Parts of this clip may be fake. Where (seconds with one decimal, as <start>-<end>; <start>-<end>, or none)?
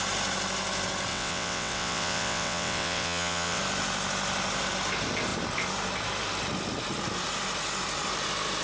1.1-3.6